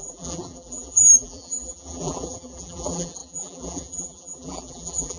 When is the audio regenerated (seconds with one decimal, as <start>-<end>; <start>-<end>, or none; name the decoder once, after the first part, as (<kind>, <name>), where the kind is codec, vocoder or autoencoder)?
0.0-5.2 (vocoder, BigVGAN v2)